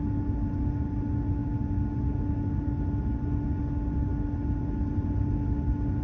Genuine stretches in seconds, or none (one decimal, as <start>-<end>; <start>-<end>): 0.0-6.0